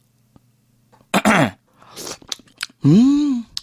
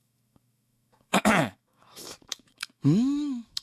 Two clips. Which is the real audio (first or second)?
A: first